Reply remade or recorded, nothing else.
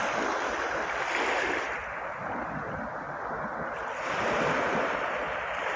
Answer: recorded